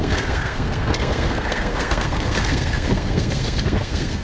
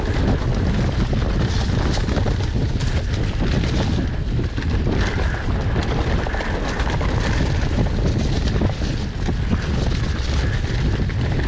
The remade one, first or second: first